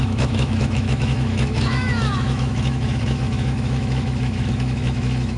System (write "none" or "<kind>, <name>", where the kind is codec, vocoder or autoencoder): autoencoder, DAC-VAE